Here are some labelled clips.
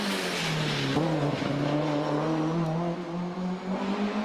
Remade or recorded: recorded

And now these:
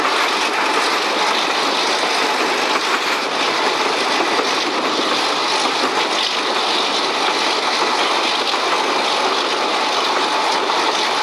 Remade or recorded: recorded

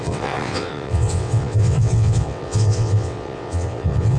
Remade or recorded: remade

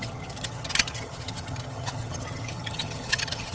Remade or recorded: remade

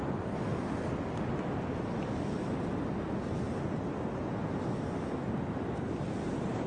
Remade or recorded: recorded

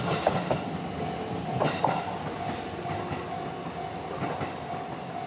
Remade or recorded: recorded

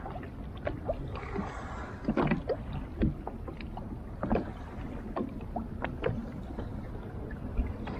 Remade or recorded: recorded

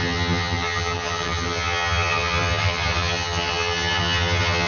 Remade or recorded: remade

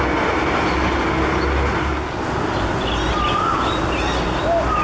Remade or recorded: recorded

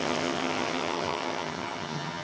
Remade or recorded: remade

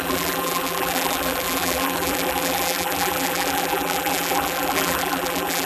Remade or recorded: remade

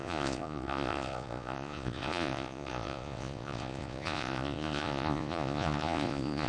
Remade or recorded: remade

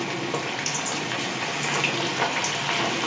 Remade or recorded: recorded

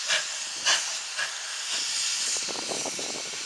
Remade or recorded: recorded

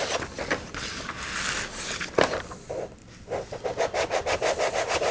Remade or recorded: recorded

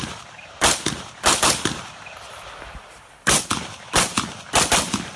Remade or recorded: recorded